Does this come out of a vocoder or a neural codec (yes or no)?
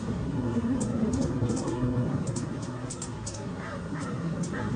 yes